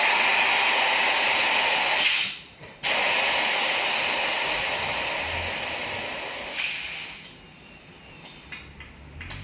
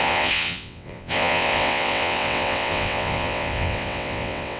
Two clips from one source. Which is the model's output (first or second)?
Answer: second